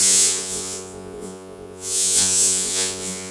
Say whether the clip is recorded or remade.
remade